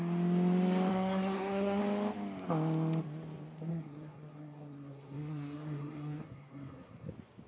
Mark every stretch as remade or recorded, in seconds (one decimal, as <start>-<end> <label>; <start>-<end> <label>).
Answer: 0.0-0.9 recorded; 0.9-1.8 remade; 1.8-3.7 recorded; 3.7-7.1 remade; 7.1-7.5 recorded